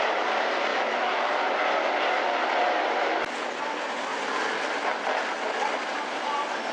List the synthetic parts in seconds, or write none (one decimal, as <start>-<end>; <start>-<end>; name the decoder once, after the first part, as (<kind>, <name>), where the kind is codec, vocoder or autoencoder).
0.7-1.5 (autoencoder, DAC-VAE)